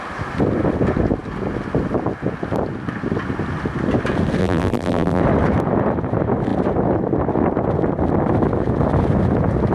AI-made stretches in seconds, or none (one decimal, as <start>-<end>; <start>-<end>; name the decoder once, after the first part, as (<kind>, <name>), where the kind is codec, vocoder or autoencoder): 4.4-5.2 (vocoder, BigVGAN v2)